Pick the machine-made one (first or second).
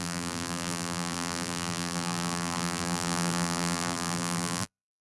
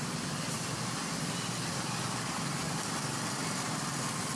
first